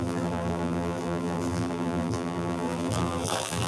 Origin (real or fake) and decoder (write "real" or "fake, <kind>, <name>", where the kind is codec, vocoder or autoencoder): fake, vocoder, BigVGAN v2